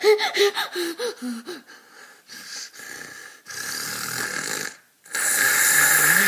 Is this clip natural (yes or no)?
yes